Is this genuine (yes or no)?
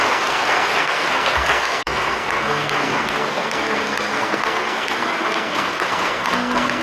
no